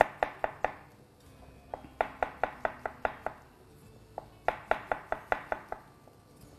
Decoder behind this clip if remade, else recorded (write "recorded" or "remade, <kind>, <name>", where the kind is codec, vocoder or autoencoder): recorded